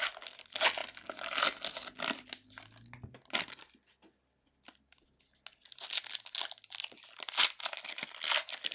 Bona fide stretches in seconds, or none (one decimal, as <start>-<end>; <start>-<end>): 0.0-8.7